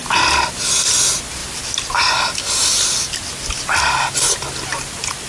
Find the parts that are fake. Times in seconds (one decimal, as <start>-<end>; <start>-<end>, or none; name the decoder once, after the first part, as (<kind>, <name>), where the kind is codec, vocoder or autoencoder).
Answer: none